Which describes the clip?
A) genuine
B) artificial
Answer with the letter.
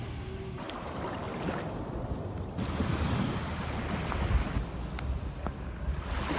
A